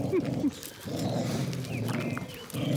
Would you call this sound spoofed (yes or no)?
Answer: no